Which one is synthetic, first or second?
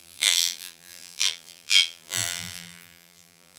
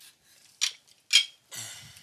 first